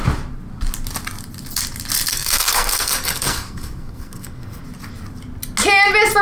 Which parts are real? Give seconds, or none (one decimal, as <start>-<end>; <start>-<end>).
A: 0.0-2.1; 4.6-6.2